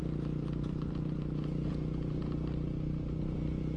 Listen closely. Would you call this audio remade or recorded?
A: recorded